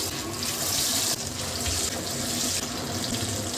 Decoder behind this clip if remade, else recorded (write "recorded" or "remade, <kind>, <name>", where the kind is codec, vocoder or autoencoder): recorded